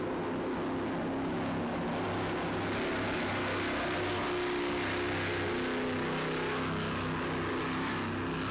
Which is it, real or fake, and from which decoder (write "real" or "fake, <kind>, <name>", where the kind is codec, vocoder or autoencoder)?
real